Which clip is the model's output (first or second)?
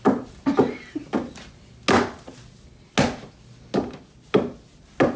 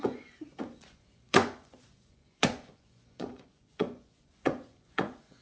second